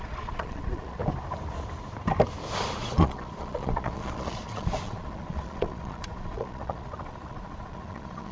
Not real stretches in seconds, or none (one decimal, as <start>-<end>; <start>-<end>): 0.0-1.0; 2.8-8.3

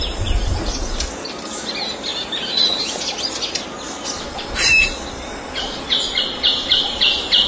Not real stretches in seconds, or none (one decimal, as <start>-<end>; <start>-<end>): 0.0-0.6; 6.8-7.5

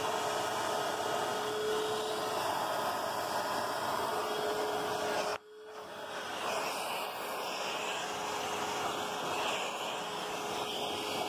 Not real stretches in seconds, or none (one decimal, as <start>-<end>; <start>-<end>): 0.0-5.3; 10.2-11.3